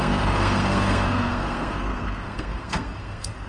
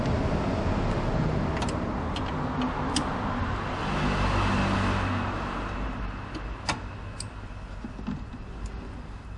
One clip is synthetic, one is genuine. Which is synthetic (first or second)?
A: first